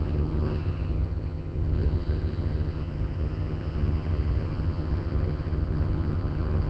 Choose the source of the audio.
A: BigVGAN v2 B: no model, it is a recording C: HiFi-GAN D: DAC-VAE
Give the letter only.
C